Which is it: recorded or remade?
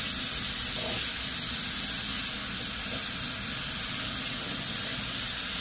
recorded